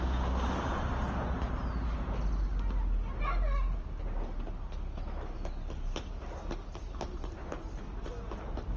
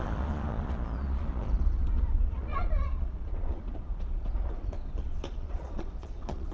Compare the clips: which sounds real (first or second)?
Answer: first